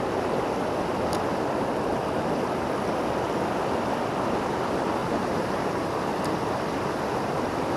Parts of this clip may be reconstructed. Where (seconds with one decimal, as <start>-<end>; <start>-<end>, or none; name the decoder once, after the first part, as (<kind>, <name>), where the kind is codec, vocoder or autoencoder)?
5.0-6.1 (vocoder, BigVGAN v2)

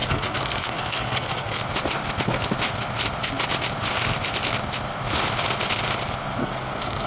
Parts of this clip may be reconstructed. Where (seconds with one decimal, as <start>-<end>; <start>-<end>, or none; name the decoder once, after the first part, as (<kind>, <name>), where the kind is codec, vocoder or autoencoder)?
0.0-1.6 (codec, SNAC); 6.4-7.1